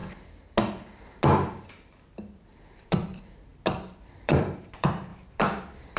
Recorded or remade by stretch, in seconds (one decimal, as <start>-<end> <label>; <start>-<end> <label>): 0.0-2.9 recorded; 2.9-3.5 remade; 3.5-4.1 recorded; 4.1-6.0 remade